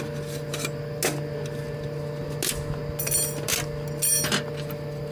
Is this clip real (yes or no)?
yes